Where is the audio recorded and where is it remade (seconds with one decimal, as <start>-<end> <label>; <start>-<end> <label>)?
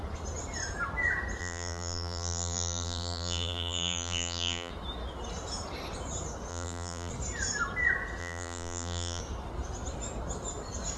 0.0-1.4 recorded; 1.4-4.7 remade; 4.7-6.5 recorded; 6.5-7.1 remade; 7.1-8.2 recorded; 8.2-9.2 remade; 9.2-11.0 recorded